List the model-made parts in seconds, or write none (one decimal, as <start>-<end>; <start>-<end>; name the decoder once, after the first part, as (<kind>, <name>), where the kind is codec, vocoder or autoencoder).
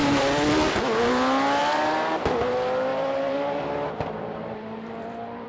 0.0-1.1 (vocoder, BigVGAN v2); 1.6-2.5; 2.9-5.5